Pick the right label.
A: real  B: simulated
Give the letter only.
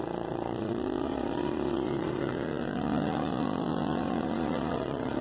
B